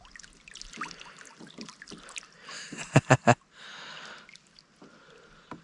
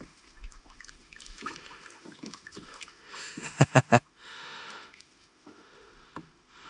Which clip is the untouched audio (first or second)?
first